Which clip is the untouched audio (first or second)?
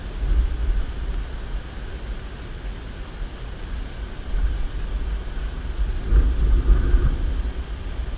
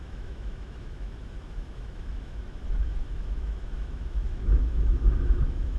first